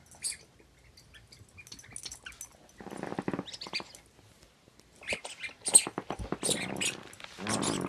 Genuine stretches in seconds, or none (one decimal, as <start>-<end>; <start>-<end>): 0.0-7.9